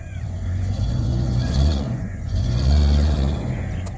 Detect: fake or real fake